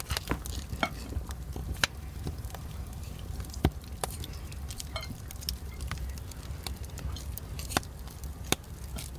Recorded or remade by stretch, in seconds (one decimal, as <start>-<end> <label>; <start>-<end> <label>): 0.0-1.6 recorded; 1.6-3.4 remade; 3.4-9.2 recorded